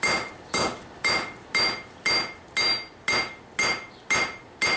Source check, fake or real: real